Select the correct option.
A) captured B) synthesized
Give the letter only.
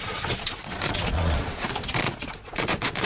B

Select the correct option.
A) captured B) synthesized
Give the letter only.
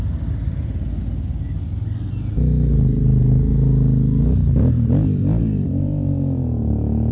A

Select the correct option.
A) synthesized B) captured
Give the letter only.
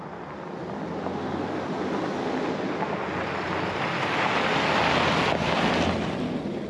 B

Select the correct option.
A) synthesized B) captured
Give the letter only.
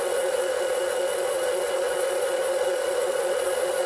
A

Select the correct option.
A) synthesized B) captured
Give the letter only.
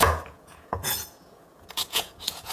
A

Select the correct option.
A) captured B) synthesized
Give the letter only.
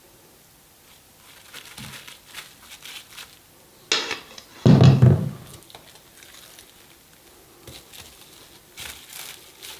A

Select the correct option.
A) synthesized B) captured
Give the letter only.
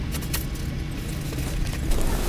B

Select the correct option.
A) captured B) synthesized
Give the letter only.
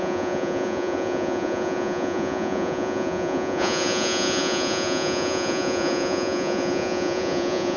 B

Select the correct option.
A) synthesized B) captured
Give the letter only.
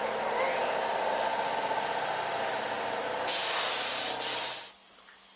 B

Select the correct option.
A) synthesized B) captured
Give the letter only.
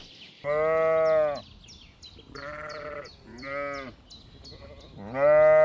B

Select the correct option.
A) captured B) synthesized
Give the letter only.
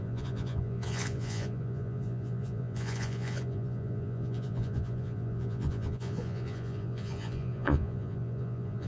B